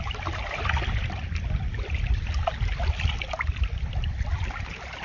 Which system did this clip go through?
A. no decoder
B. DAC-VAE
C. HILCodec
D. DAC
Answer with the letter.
A